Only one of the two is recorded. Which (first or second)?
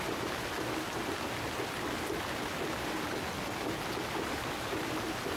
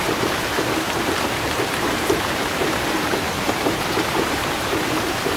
first